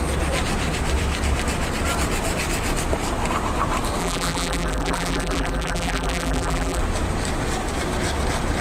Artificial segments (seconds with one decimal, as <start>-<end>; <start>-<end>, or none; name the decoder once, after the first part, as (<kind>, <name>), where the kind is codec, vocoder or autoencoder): 4.0-6.8 (vocoder, BigVGAN v2)